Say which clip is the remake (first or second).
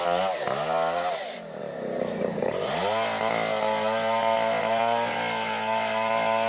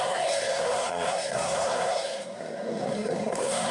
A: second